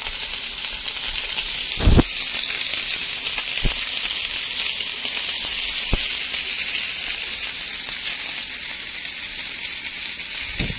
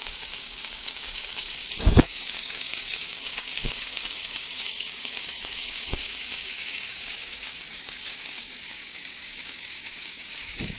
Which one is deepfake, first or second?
second